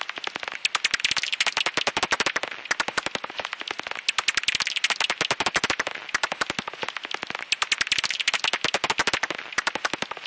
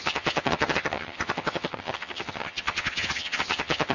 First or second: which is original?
first